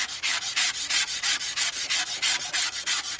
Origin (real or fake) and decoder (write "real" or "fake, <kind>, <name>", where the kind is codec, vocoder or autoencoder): fake, vocoder, Vocos